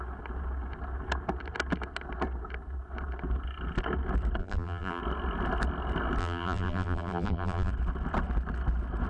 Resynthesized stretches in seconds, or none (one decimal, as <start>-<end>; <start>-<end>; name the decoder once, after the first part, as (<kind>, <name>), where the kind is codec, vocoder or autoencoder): 4.4-5.0 (vocoder, BigVGAN v2); 6.2-7.7